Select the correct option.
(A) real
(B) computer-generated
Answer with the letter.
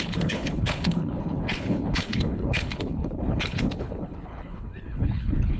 B